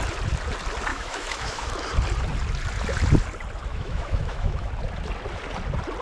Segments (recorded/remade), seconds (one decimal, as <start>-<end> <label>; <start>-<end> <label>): 0.0-0.9 recorded; 0.9-1.7 remade; 1.7-3.7 recorded; 3.7-4.7 remade; 4.7-6.0 recorded